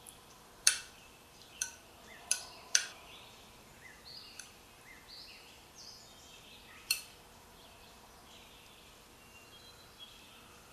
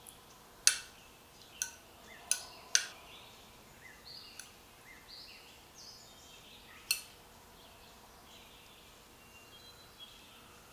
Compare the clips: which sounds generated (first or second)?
first